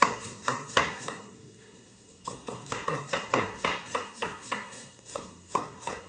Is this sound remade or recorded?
remade